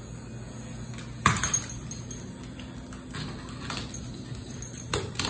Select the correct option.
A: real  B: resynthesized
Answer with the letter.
A